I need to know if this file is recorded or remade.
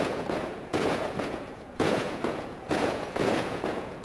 remade